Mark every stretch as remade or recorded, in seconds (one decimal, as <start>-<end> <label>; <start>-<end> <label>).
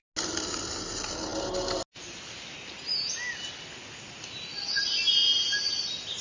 0.0-6.2 recorded